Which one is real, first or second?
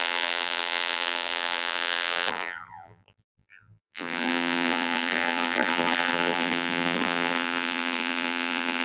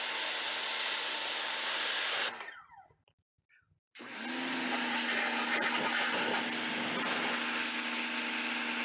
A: second